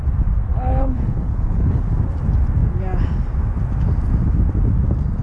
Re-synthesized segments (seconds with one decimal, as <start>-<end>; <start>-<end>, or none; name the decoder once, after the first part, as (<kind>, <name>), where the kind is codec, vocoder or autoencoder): 0.5-1.8 (codec, HILCodec)